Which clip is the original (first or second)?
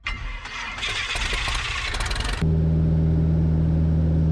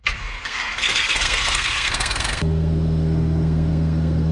first